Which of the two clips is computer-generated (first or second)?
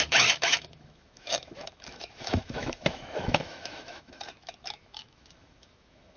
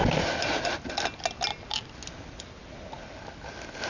first